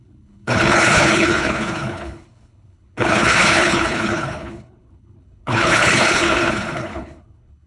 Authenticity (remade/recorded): remade